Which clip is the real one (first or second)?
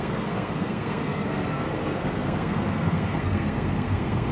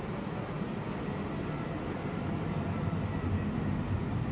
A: second